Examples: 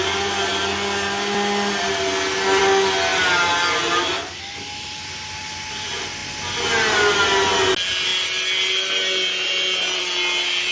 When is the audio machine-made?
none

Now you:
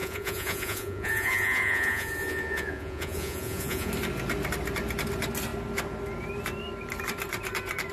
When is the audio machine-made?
0.0-3.9

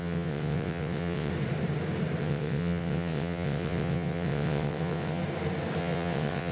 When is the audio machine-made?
0.0-1.3; 2.2-5.2; 5.8-6.5

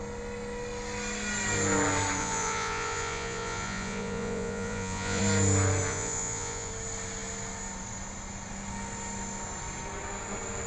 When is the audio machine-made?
2.2-5.2; 5.9-6.7

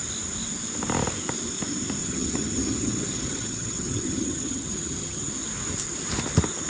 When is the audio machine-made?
2.0-5.3

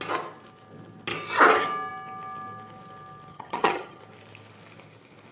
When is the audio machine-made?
3.3-4.0

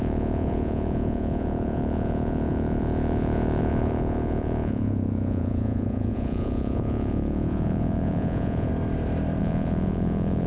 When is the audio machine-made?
0.0-8.7; 9.4-10.5

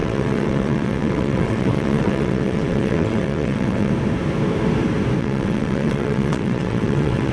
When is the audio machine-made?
0.0-3.9; 5.2-7.3